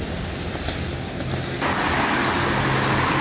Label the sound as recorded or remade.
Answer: recorded